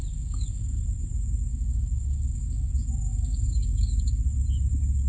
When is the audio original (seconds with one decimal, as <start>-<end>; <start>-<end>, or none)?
0.8-1.5; 2.7-3.1; 4.2-5.1